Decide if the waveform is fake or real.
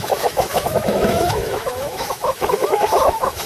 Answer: fake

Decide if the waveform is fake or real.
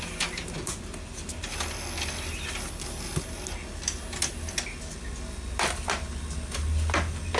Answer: real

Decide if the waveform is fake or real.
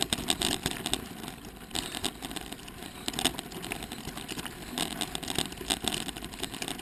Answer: real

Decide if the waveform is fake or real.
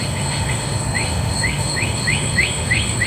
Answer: fake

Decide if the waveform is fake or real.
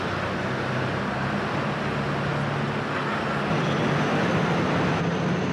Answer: real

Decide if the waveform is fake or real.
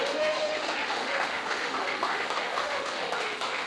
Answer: fake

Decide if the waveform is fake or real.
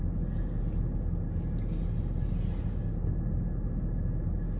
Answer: real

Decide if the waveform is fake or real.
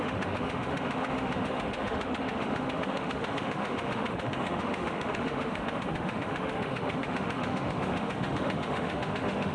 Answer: fake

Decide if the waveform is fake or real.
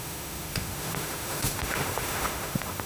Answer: fake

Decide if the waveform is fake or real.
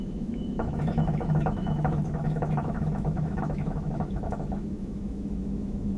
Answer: fake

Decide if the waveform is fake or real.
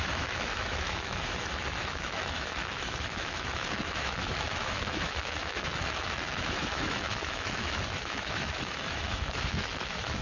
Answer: fake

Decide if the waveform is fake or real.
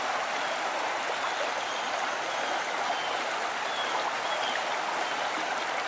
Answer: real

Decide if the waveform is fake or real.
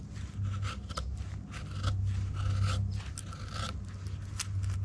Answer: real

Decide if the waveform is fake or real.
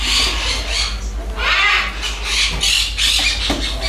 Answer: real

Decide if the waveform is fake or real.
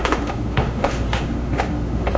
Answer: fake